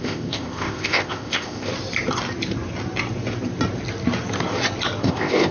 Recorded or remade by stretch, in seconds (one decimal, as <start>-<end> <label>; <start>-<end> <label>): 0.0-1.7 remade; 1.7-5.0 recorded; 5.0-5.5 remade